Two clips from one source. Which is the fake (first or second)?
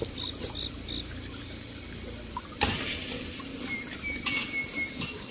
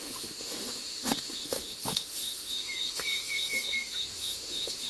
second